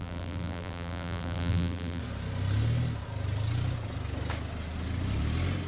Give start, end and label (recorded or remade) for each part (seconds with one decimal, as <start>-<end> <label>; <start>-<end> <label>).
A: 0.0-2.0 remade; 2.0-5.7 recorded